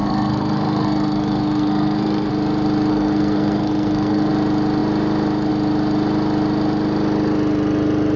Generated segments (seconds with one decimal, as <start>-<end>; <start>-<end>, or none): 0.0-2.3; 2.9-4.3

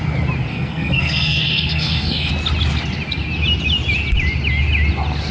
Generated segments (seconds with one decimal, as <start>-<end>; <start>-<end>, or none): 0.5-2.3

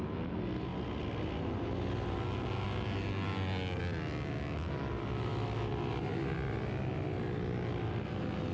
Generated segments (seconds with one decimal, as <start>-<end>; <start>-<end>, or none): none

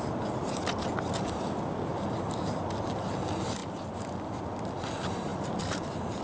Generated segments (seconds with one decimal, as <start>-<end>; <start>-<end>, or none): 1.9-2.9; 3.6-4.4; 5.3-6.2